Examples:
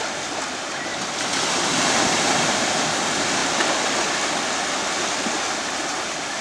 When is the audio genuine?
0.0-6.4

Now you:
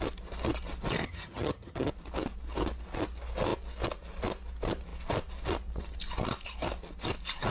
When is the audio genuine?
0.0-1.0; 1.9-7.5

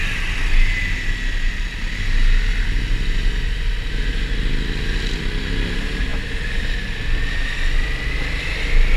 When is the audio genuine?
0.0-9.0